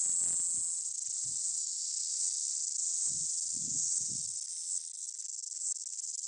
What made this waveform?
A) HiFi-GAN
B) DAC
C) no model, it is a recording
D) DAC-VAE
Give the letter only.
C